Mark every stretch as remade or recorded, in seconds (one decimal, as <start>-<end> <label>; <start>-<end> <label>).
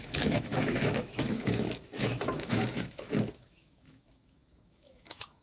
0.0-5.4 remade